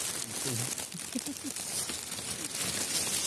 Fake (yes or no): no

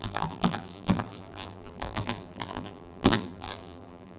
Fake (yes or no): yes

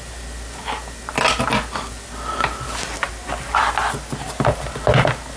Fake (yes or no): no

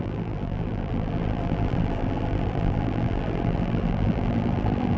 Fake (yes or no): yes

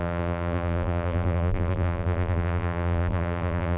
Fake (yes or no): yes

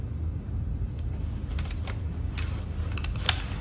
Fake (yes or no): yes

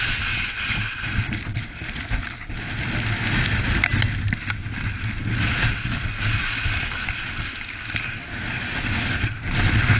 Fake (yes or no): no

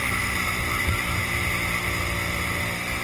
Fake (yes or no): no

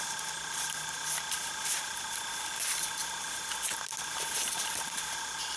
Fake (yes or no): no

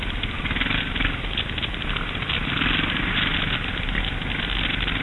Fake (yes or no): no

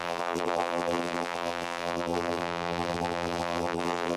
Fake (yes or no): yes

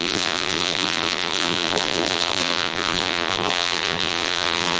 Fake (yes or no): yes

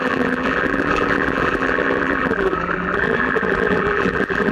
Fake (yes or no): yes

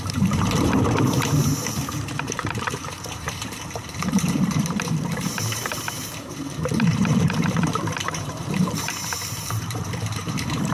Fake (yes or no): yes